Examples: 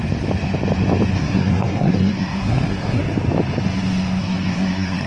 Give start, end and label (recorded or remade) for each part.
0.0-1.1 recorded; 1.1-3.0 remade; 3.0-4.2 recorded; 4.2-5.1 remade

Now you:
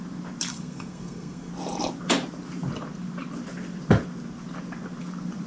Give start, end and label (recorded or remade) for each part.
0.0-0.5 recorded; 0.5-1.5 remade; 1.5-5.5 recorded

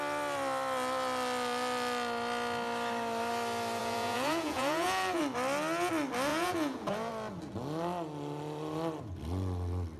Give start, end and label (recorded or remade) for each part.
0.0-3.8 recorded; 3.8-5.2 remade; 5.2-6.3 recorded; 6.3-7.1 remade; 7.1-10.0 recorded

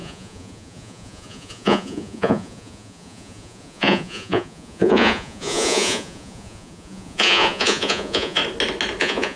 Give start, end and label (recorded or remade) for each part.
0.0-8.4 remade; 8.4-9.0 recorded; 9.0-9.4 remade

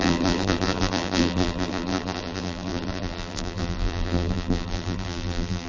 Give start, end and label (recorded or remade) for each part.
0.0-5.7 remade

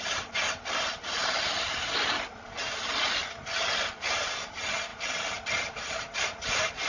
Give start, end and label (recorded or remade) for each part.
0.0-6.9 recorded

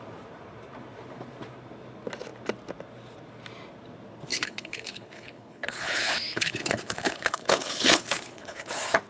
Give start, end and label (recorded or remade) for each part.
0.0-4.3 recorded; 4.3-8.7 remade; 8.7-9.1 recorded